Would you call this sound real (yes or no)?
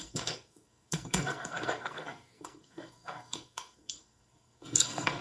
no